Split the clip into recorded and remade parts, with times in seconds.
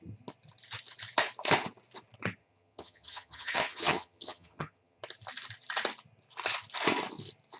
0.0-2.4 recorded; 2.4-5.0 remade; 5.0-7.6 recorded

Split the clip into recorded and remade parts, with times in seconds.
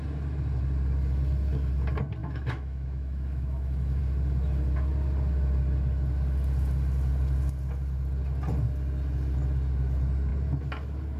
0.0-2.2 recorded; 2.2-4.0 remade; 4.0-11.2 recorded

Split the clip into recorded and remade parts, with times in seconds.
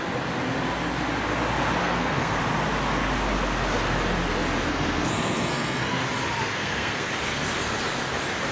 0.0-1.8 recorded; 1.8-2.4 remade; 2.4-4.7 recorded; 4.7-6.0 remade; 6.0-6.4 recorded; 6.4-7.1 remade; 7.1-8.5 recorded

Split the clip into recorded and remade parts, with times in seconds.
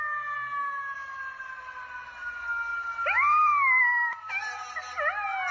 0.0-5.5 recorded